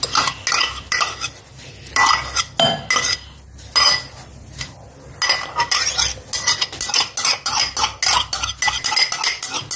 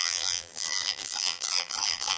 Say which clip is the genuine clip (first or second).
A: first